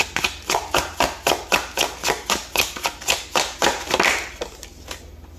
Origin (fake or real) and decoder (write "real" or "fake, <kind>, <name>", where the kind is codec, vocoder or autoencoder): real